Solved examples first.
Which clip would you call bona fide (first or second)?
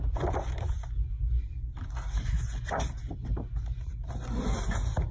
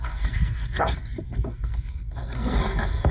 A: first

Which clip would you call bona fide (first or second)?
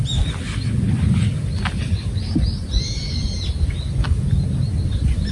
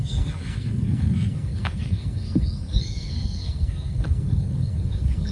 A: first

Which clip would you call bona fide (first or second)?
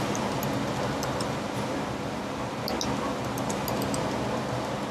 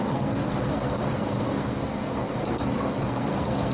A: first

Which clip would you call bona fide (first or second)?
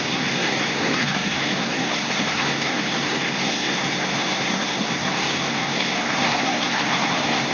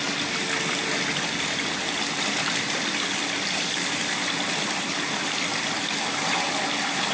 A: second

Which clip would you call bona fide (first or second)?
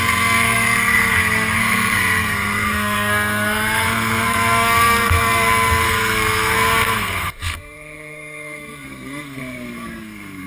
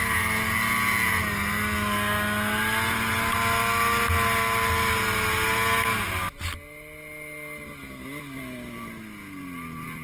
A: second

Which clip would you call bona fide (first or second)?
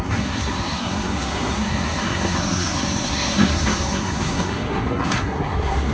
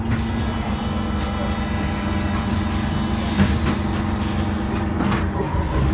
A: second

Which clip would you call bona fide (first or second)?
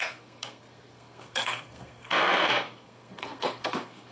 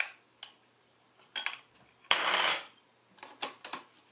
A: second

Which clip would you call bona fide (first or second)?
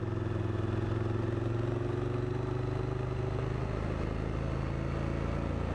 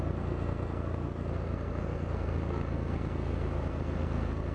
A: first